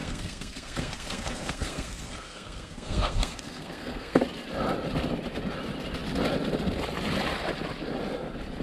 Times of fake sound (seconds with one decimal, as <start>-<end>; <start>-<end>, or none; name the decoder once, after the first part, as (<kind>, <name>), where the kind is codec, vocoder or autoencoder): 0.0-4.2 (codec, SNAC)